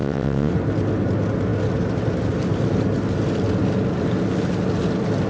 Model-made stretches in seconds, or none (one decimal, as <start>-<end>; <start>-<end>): 0.0-0.5

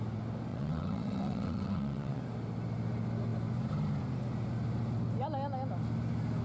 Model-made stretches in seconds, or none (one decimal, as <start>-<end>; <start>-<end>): 0.5-2.2